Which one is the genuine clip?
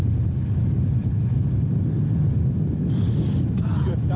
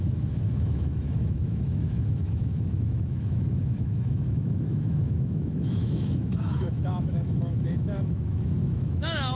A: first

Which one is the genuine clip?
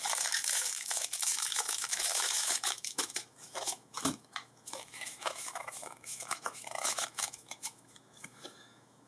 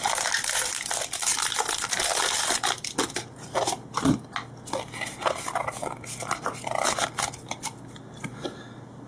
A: second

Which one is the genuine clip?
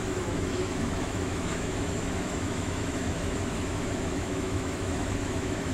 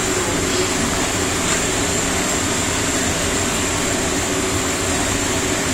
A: second